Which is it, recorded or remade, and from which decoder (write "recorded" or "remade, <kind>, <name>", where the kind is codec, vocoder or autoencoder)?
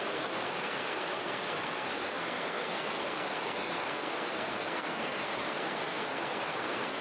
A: remade, codec, SNAC